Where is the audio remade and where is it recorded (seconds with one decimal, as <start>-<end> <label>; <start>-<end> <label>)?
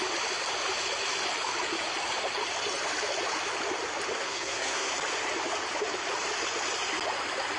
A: 0.0-4.1 recorded; 4.1-4.9 remade; 4.9-7.6 recorded